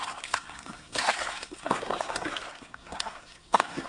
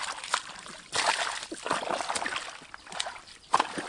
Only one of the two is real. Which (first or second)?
second